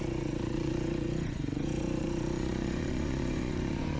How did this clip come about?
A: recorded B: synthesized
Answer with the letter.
B